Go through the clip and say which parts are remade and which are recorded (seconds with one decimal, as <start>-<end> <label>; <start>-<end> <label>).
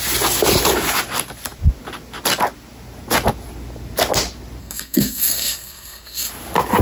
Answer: 0.0-4.6 recorded; 4.6-6.3 remade; 6.3-6.8 recorded